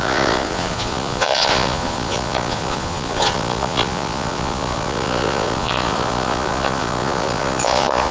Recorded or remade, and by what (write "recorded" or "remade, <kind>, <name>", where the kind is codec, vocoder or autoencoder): remade, vocoder, Vocos